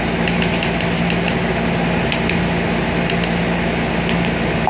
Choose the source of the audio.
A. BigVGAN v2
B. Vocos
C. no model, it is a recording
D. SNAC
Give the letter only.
C